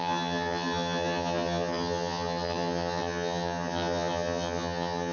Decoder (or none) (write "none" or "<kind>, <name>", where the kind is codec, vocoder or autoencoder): vocoder, HiFi-GAN